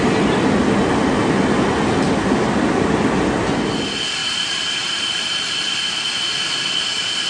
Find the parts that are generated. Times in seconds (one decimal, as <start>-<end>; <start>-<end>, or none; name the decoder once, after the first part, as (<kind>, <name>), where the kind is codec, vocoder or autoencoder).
4.2-5.5 (vocoder, BigVGAN v2)